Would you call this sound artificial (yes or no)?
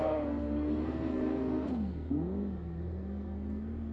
yes